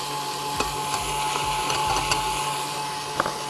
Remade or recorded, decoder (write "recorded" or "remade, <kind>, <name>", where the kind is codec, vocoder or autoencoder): recorded